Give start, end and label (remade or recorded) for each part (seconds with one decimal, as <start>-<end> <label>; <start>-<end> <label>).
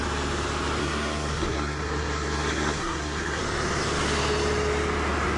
0.0-0.8 recorded; 0.8-3.4 remade; 3.4-5.4 recorded